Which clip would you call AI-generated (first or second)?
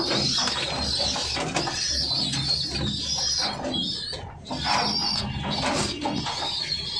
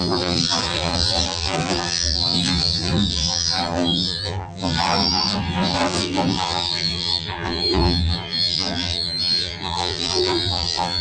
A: second